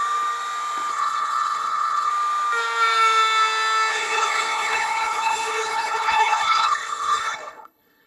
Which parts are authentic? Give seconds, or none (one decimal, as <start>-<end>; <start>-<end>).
0.0-0.9; 2.1-3.9